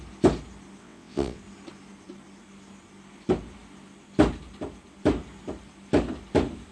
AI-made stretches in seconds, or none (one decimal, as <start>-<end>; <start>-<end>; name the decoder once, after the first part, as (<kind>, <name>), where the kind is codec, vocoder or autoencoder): 0.8-1.4 (vocoder, WaveNeXt)